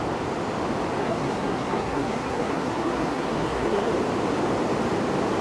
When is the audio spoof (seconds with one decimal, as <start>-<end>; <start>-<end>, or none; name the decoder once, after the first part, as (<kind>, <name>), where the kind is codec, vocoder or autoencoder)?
1.0-3.9 (codec, SNAC)